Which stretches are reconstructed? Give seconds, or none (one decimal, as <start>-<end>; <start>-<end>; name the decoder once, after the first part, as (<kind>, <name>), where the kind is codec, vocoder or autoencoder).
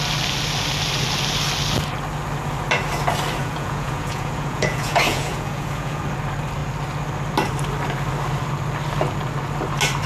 3.4-6.0 (vocoder, Vocos)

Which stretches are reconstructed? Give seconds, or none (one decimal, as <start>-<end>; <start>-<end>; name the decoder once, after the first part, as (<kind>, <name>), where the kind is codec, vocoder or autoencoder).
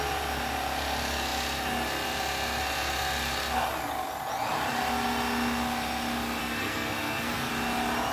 6.4-7.5 (codec, SNAC)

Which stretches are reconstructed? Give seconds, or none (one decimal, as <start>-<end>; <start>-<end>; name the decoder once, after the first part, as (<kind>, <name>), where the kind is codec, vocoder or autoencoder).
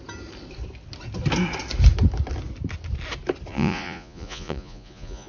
3.5-5.3 (vocoder, Vocos)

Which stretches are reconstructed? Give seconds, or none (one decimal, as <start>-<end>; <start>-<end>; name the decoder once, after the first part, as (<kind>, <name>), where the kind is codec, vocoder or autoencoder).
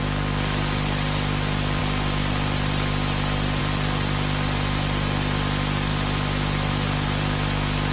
none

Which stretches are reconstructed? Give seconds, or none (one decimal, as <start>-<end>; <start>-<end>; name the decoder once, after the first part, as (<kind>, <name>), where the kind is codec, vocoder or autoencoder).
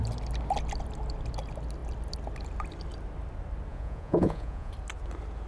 3.7-4.7 (vocoder, Vocos)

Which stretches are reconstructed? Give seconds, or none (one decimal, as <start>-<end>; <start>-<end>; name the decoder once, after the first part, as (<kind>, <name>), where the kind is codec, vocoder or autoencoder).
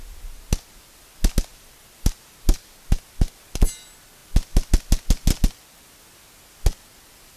1.5-2.1 (vocoder, BigVGAN v2)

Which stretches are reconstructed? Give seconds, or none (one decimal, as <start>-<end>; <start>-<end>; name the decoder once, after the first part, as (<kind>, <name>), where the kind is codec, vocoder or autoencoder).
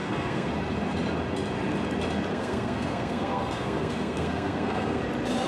0.0-0.5 (codec, SNAC); 2.3-5.0